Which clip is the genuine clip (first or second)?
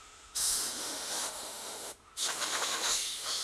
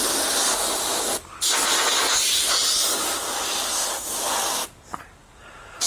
second